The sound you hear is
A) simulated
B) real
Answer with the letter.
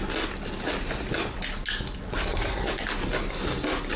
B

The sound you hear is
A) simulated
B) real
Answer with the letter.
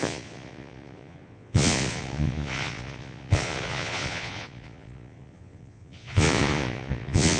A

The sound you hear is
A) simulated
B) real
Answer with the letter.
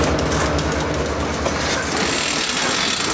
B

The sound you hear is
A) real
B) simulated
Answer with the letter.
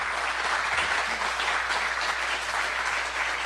A